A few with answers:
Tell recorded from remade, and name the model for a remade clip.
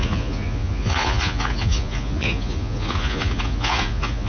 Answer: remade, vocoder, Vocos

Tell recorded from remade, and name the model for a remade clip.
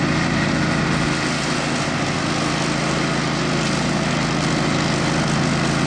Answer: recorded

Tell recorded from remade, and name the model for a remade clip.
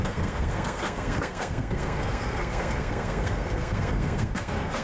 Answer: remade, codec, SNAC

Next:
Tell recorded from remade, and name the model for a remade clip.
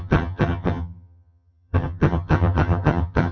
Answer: remade, vocoder, HiFi-GAN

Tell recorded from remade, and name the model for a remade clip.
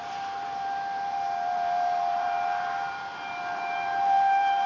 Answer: remade, vocoder, BigVGAN v2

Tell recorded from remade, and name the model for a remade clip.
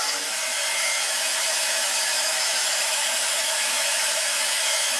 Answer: remade, autoencoder, DAC-VAE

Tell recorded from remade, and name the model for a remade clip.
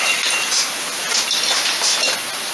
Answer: recorded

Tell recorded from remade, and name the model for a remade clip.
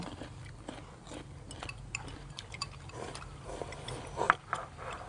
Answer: remade, vocoder, BigVGAN v2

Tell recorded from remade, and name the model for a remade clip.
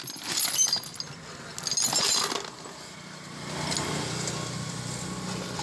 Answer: recorded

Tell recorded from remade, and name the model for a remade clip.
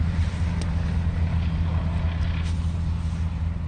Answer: recorded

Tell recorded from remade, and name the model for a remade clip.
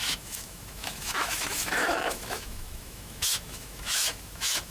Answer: remade, autoencoder, DAC-VAE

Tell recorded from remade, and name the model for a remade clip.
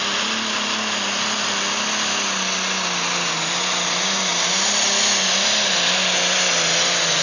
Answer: recorded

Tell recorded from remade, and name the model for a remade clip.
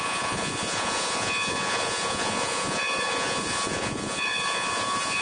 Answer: remade, vocoder, Vocos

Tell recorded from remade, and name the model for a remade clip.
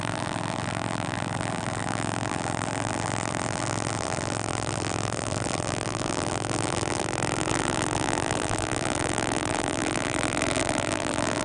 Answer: remade, vocoder, BigVGAN v2